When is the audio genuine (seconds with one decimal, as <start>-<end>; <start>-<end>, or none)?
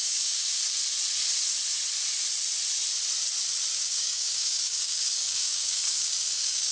0.6-3.7